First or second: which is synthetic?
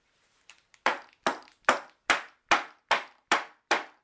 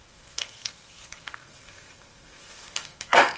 second